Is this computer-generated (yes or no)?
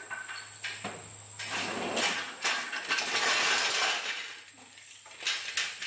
no